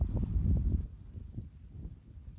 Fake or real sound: real